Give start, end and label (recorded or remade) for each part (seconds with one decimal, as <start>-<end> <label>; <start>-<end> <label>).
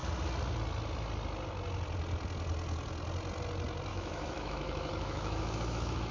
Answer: 0.0-3.9 recorded; 3.9-6.1 remade